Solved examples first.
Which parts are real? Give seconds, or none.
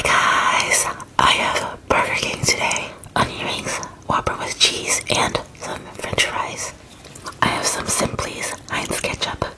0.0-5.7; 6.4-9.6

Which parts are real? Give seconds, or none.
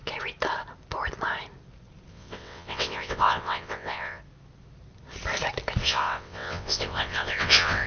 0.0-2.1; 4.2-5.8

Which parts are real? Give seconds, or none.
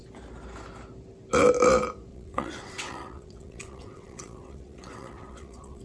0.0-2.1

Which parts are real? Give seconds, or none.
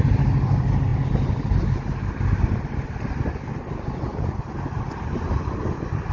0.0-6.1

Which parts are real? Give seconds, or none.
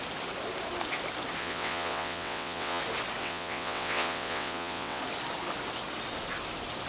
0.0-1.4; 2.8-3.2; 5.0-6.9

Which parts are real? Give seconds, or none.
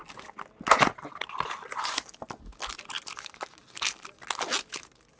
0.0-5.2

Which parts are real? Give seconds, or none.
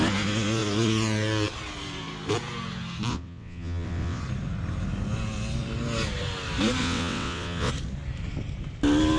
0.0-3.1; 4.2-6.8; 7.7-9.2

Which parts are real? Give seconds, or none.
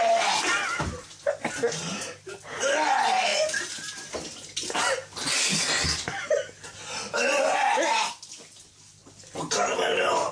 0.0-10.3